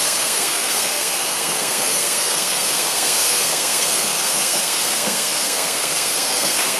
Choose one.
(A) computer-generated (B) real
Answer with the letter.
A